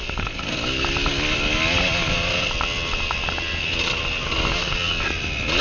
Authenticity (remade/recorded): recorded